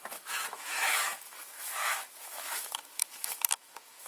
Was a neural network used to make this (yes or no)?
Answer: yes